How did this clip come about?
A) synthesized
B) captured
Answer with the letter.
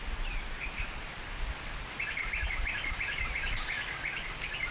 B